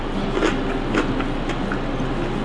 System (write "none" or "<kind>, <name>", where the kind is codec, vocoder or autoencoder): none